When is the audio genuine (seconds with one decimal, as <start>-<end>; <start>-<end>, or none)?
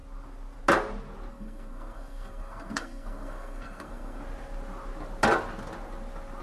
0.0-1.3; 4.2-6.4